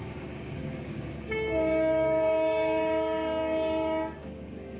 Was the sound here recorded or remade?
remade